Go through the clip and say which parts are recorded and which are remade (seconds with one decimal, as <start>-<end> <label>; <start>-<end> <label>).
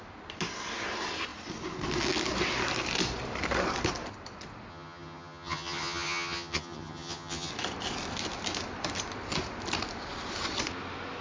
0.0-4.7 recorded; 4.7-7.5 remade; 7.5-11.2 recorded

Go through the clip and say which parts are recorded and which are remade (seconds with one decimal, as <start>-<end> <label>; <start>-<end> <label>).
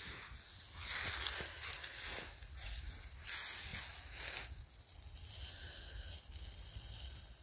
0.0-2.6 recorded; 2.6-3.2 remade; 3.2-7.4 recorded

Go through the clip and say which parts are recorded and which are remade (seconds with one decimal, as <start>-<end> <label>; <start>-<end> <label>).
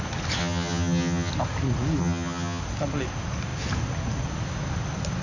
0.0-0.4 recorded; 0.4-1.3 remade; 1.3-2.0 recorded; 2.0-2.6 remade; 2.6-5.2 recorded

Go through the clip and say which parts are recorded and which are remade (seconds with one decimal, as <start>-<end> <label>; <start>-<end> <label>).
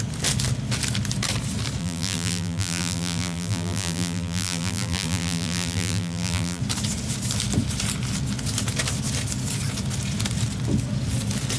0.0-1.8 recorded; 1.8-6.6 remade; 6.6-11.6 recorded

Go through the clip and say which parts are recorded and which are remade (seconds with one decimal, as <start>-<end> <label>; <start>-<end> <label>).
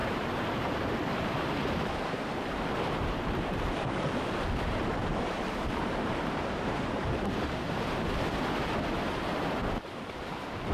0.0-4.1 remade; 4.1-5.0 recorded; 5.0-8.0 remade; 8.0-10.7 recorded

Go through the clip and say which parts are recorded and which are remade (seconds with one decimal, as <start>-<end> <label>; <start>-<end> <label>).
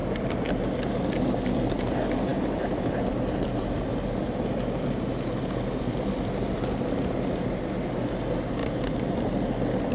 0.0-1.8 remade; 1.8-2.3 recorded; 2.3-7.6 remade; 7.6-8.6 recorded; 8.6-9.5 remade; 9.5-9.9 recorded